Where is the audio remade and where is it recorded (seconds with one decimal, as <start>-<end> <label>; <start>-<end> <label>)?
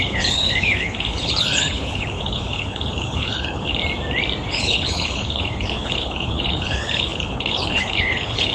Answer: 0.0-3.7 remade; 3.7-4.5 recorded; 4.5-8.5 remade